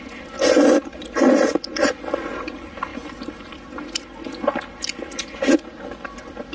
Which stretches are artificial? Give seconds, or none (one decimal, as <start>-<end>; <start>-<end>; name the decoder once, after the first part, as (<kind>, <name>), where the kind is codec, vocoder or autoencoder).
none